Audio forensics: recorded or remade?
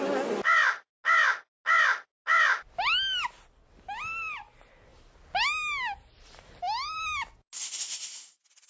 recorded